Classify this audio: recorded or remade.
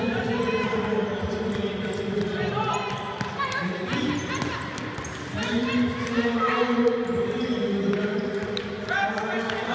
recorded